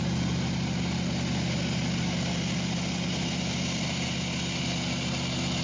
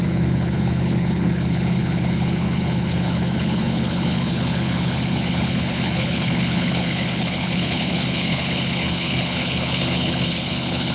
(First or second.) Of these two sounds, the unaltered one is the first